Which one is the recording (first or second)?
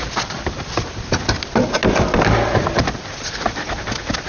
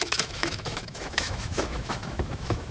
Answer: first